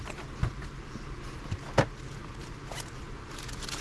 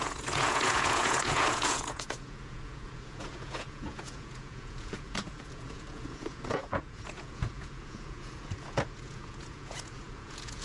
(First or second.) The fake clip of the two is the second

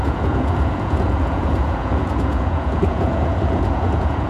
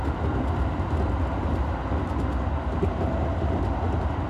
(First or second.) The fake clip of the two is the first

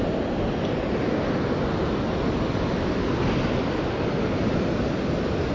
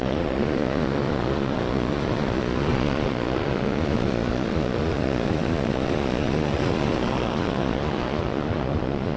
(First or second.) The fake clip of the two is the second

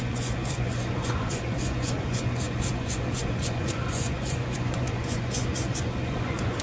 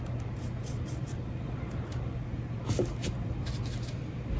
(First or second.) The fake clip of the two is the first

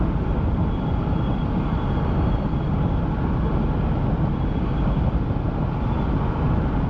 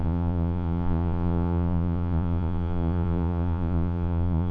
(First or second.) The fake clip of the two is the second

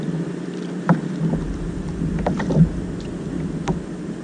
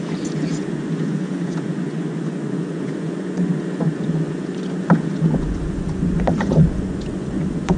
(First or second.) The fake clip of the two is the second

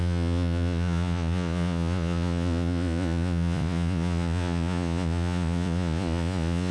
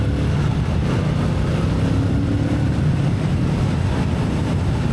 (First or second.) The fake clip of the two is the first